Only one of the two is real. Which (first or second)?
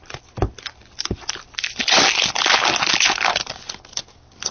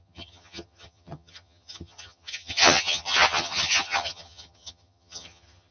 first